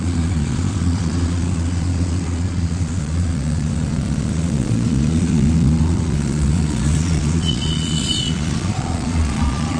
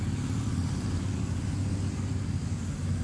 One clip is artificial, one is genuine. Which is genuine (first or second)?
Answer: second